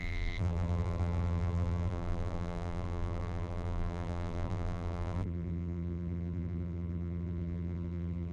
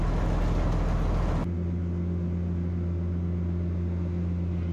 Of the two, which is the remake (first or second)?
first